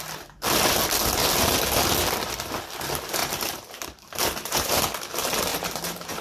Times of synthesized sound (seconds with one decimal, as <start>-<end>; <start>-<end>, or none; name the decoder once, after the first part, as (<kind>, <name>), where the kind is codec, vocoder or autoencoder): 3.2-4.8 (vocoder, BigVGAN v2); 5.5-6.2